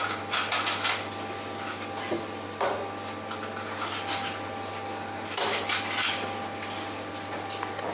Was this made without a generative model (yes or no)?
yes